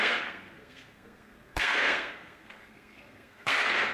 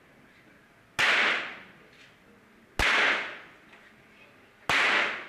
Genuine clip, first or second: second